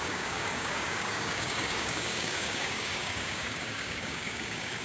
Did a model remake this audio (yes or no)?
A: yes